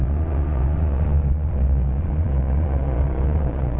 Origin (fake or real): fake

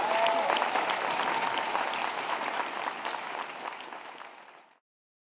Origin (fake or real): real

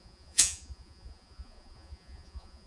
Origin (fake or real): fake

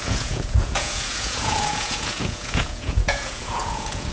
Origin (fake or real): fake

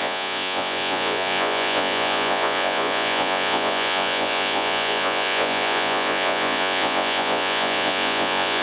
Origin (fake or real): fake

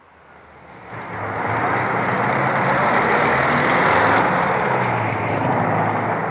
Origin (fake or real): real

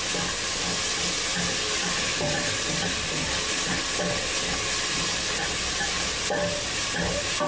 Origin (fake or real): real